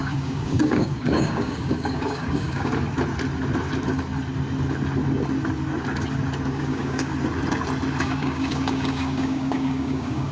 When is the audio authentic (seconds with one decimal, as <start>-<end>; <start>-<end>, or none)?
2.7-6.5; 7.1-8.0